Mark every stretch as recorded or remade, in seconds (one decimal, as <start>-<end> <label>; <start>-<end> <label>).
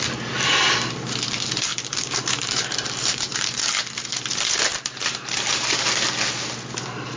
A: 0.0-1.7 recorded; 1.7-3.6 remade; 3.6-4.7 recorded; 4.7-5.4 remade; 5.4-7.2 recorded